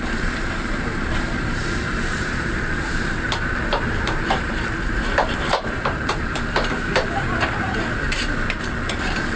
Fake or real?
fake